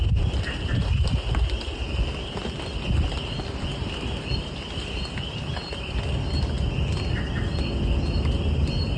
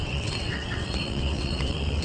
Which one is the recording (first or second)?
first